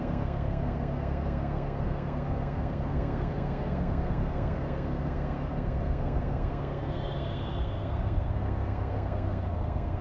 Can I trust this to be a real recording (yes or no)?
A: no